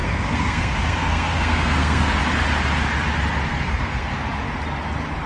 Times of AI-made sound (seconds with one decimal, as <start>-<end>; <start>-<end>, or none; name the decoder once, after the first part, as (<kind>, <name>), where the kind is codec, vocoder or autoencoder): 0.0-2.2 (codec, SNAC); 3.5-4.1